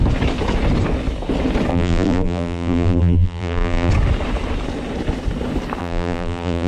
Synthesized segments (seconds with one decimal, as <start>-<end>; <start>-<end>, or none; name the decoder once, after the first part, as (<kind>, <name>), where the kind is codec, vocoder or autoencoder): 1.7-3.9 (vocoder, BigVGAN v2); 5.8-6.7